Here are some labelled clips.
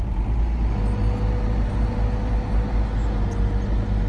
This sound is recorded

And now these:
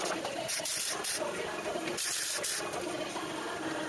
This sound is recorded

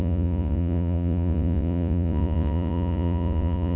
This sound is remade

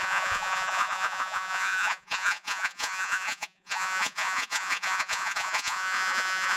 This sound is remade